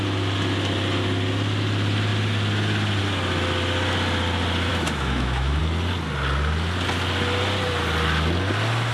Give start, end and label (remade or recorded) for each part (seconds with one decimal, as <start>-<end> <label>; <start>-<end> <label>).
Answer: 0.0-4.7 recorded; 4.7-5.6 remade; 5.6-8.9 recorded